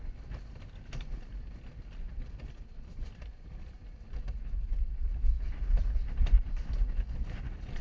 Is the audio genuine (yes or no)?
yes